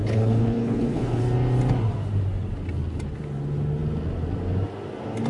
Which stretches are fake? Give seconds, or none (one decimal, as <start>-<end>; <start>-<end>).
0.0-1.2